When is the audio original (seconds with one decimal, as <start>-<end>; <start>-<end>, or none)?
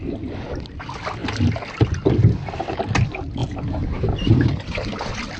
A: 0.0-5.4